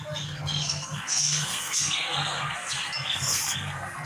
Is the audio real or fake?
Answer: fake